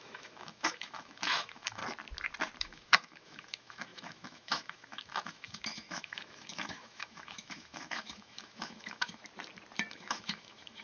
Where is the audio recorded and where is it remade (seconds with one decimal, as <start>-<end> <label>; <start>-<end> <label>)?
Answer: 0.0-1.8 remade; 1.8-2.6 recorded; 2.6-9.2 remade; 9.2-9.9 recorded; 9.9-10.8 remade